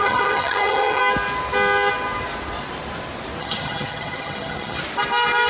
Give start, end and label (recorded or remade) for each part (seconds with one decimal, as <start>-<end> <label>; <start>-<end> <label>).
0.0-1.0 remade; 1.0-3.4 recorded; 3.4-4.8 remade; 4.8-5.5 recorded